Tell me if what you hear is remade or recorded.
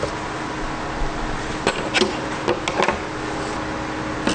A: recorded